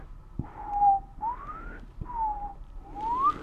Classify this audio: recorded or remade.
recorded